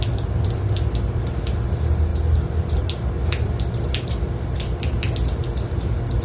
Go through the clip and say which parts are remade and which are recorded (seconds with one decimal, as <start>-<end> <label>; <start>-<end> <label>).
0.0-6.2 recorded